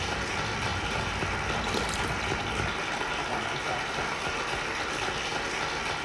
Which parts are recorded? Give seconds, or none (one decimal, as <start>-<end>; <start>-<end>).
0.0-6.0